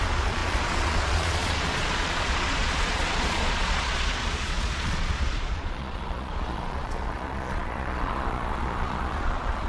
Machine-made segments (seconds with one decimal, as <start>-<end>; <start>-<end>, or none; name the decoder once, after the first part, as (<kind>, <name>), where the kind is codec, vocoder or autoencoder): 0.0-9.7 (vocoder, Vocos)